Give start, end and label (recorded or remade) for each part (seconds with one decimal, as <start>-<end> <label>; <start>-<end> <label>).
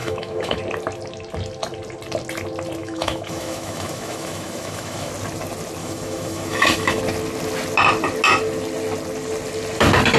0.0-0.6 remade; 0.6-2.8 recorded; 2.8-5.1 remade; 5.1-5.8 recorded; 5.8-7.0 remade; 7.0-10.2 recorded